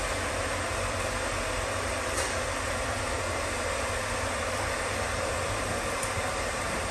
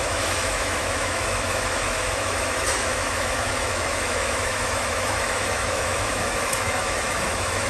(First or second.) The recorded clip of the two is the first